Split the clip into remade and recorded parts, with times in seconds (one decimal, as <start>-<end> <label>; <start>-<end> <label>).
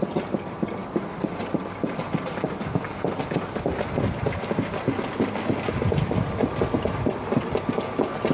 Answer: 0.0-8.3 recorded